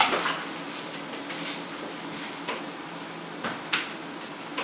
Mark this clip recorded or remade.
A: recorded